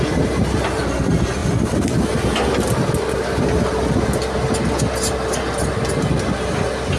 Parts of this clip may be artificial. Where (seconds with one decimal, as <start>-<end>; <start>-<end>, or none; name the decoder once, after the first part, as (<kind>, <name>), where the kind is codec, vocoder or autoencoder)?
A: none